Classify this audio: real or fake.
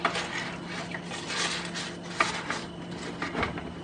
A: real